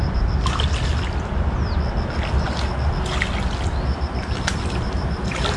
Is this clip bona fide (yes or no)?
yes